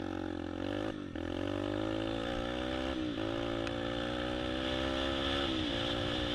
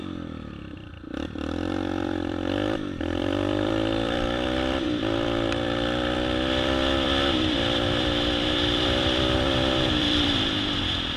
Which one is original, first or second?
first